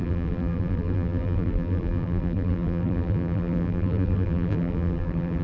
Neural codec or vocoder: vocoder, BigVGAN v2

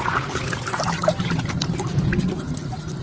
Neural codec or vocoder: none